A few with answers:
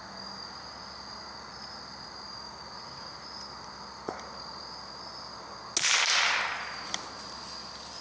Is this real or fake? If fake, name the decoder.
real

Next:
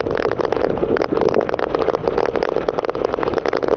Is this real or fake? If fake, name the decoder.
real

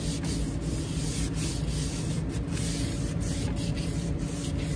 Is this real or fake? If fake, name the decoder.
real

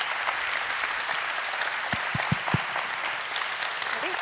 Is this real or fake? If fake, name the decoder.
real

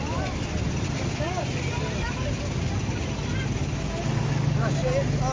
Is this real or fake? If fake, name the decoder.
real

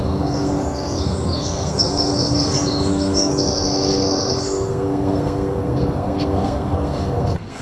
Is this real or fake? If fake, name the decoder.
fake, codec, SNAC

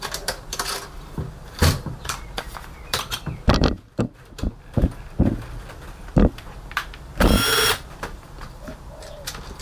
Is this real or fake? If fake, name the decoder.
fake, vocoder, BigVGAN v2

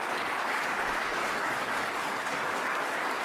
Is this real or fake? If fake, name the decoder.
fake, codec, DAC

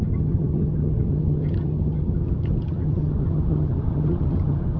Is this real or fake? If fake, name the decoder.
fake, vocoder, HiFi-GAN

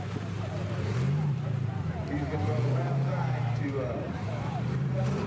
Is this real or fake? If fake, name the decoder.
fake, vocoder, BigVGAN v2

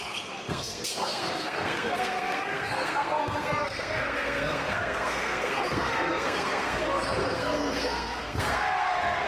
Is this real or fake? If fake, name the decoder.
fake, codec, SNAC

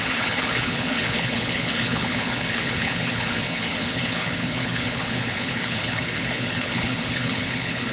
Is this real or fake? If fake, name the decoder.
fake, codec, HILCodec